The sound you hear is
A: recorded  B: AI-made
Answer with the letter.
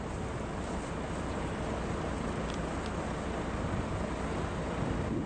A